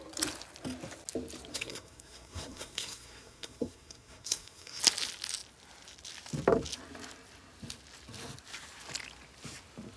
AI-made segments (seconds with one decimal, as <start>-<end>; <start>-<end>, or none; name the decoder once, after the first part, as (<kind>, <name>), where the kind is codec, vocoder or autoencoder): 1.5-4.8 (codec, SNAC)